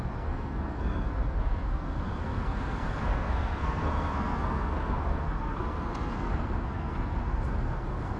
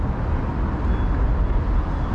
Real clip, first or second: second